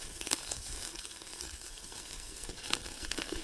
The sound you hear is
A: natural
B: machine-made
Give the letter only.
B